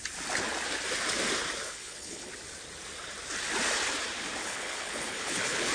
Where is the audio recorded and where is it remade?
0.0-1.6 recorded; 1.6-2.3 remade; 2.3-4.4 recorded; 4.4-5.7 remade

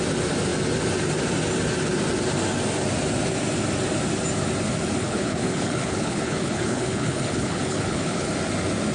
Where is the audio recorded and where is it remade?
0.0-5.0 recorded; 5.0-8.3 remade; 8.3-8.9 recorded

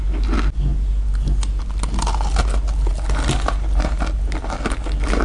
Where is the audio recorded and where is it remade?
0.0-5.2 recorded

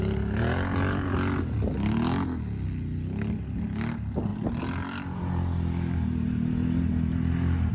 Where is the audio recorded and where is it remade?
0.0-7.7 recorded